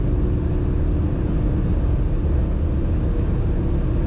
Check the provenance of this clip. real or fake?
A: real